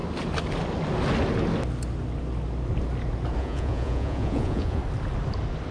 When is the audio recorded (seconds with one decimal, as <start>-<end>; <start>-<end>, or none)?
0.0-3.4; 4.8-5.7